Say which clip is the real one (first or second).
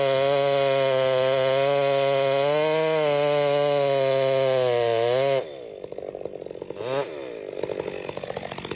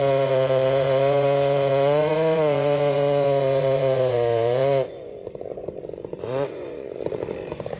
first